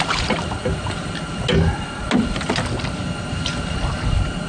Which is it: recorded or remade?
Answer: recorded